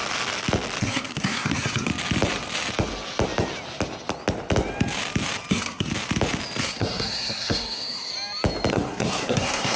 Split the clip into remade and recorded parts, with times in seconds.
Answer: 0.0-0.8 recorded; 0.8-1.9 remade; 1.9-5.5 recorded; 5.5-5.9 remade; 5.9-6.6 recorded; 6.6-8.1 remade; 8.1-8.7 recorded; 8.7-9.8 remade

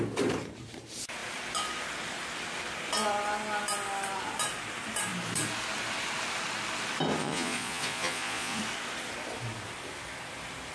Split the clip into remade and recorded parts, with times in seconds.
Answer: 0.0-7.2 recorded; 7.2-8.6 remade; 8.6-10.7 recorded

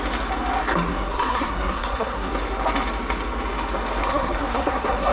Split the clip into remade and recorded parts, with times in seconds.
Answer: 0.0-0.9 recorded; 0.9-2.3 remade; 2.3-4.0 recorded; 4.0-5.1 remade

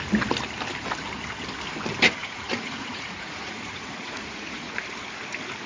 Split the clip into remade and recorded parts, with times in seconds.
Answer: 0.0-2.2 recorded; 2.2-4.7 remade; 4.7-5.7 recorded